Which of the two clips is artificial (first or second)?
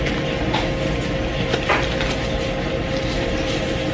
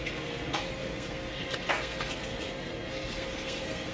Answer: second